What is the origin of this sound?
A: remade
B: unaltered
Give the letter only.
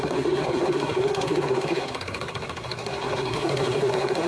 A